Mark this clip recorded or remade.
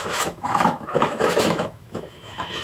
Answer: remade